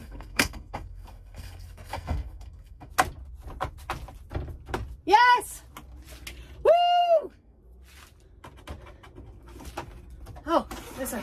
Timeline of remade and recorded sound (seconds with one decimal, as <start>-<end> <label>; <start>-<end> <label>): 0.0-2.9 remade; 2.9-7.0 recorded; 7.0-7.6 remade; 7.6-11.2 recorded